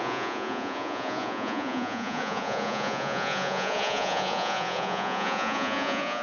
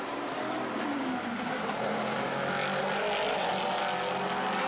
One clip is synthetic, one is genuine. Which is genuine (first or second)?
second